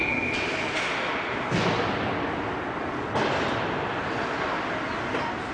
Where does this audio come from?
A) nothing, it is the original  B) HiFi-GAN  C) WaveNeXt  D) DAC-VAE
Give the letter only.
A